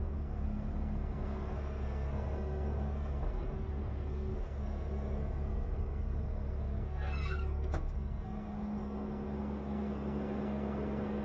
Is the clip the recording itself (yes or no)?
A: no